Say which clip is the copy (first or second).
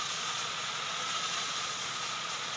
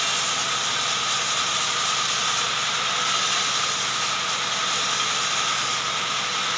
first